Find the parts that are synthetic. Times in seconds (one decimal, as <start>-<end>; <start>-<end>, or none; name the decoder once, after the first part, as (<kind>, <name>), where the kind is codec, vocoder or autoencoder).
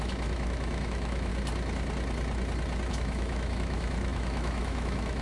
0.0-1.3 (autoencoder, DAC-VAE); 2.9-5.2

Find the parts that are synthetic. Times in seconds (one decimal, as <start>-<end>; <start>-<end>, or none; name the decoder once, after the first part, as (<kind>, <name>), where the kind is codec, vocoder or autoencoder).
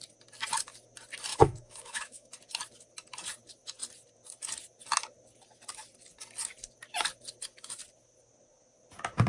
1.3-2.3 (autoencoder, DAC-VAE)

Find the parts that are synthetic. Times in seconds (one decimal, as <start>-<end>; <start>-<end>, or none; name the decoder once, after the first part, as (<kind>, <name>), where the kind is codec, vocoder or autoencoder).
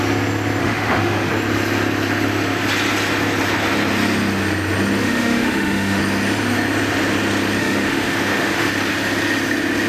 0.6-1.3 (autoencoder, DAC-VAE); 5.0-6.0; 7.6-8.7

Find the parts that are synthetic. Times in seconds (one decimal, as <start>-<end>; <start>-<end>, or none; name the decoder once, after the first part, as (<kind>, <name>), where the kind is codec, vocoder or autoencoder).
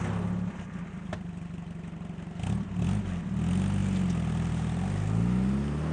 none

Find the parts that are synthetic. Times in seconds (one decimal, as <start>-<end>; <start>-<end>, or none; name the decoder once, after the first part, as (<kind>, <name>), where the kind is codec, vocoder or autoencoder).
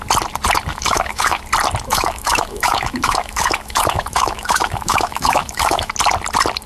0.7-1.4 (autoencoder, DAC-VAE); 1.9-5.9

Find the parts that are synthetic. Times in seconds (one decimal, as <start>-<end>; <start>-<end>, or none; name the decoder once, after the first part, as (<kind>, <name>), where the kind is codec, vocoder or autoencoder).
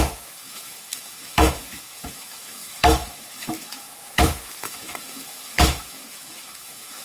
0.0-7.0 (autoencoder, DAC-VAE)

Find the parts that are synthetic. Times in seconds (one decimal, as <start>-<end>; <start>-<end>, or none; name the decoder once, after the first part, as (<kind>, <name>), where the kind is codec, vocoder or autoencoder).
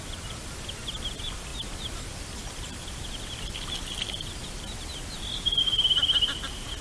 none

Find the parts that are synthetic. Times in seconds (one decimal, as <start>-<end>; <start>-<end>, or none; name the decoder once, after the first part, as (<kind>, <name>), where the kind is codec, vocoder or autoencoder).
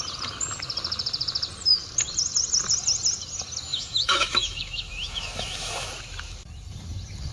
3.7-5.9 (autoencoder, DAC-VAE)